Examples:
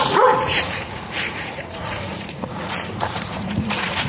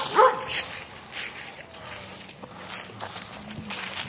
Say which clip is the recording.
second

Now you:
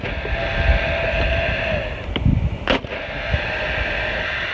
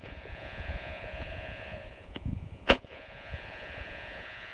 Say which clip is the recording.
first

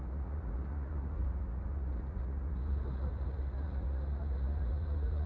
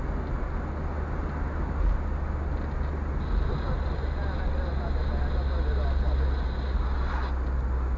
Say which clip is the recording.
second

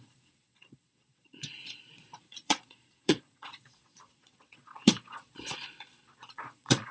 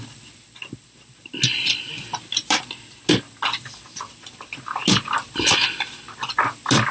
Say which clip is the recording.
second